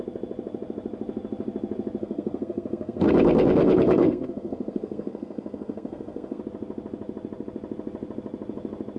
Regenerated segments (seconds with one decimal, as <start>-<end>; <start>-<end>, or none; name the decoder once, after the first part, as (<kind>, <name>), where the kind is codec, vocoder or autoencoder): 2.0-6.4 (codec, SNAC)